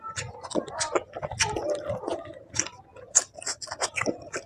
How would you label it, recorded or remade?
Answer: recorded